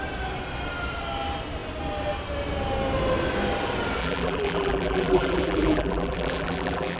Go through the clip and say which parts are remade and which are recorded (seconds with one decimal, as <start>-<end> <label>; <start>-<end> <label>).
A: 0.0-4.0 recorded; 4.0-7.0 remade